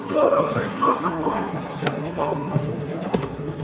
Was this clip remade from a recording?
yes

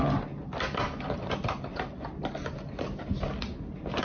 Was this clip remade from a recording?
no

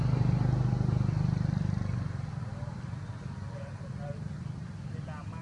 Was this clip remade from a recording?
no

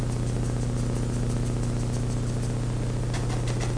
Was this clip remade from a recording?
no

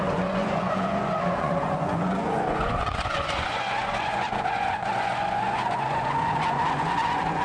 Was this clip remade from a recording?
yes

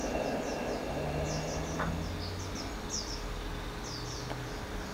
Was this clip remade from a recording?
no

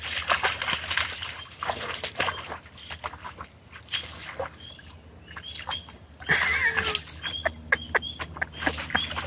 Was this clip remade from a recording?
no